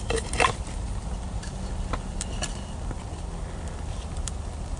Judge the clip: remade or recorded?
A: recorded